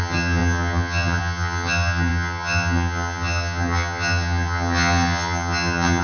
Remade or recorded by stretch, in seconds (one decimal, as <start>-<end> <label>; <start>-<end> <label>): 0.0-6.0 remade